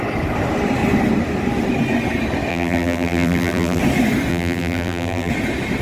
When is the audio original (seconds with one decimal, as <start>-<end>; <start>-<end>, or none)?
0.0-2.5; 3.8-4.3; 5.3-5.8